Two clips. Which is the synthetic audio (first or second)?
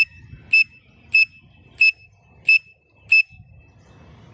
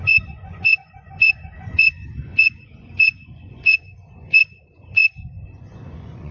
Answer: second